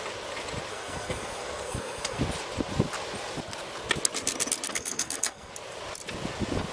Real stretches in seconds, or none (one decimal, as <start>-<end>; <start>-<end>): 0.0-0.7; 2.2-4.7; 5.5-6.7